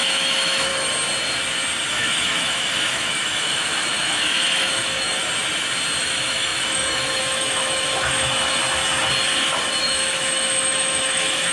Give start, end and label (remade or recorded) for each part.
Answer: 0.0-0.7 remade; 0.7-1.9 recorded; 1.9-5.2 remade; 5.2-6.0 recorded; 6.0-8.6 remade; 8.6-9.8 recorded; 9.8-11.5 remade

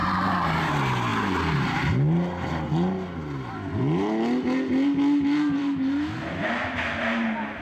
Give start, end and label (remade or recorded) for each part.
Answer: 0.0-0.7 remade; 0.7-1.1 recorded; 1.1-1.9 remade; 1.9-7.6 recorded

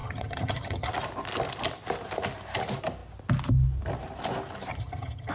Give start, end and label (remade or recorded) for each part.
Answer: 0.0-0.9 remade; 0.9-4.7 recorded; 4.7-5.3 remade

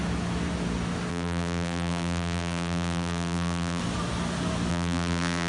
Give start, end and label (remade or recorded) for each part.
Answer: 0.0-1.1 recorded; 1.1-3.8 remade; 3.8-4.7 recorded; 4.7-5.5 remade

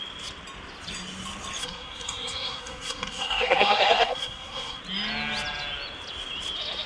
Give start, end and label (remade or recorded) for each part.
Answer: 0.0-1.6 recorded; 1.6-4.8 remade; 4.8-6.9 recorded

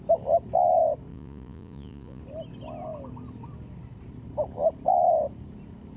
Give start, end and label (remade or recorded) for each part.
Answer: 0.0-1.1 recorded; 1.1-2.2 remade; 2.2-6.0 recorded

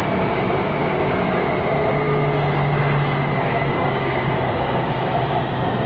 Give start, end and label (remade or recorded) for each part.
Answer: 0.0-3.3 recorded; 3.3-5.4 remade; 5.4-5.9 recorded

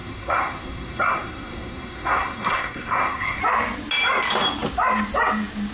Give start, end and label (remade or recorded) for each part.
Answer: 0.0-3.4 remade; 3.4-5.7 recorded